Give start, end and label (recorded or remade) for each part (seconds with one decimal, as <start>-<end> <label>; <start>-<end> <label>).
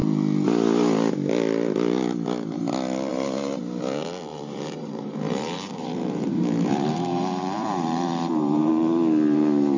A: 0.0-3.1 recorded; 3.1-3.6 remade; 3.6-4.3 recorded; 4.3-8.7 remade; 8.7-9.8 recorded